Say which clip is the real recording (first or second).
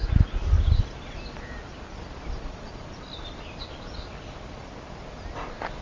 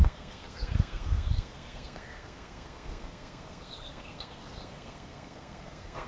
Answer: first